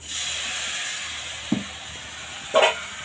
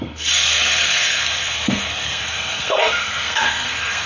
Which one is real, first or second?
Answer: first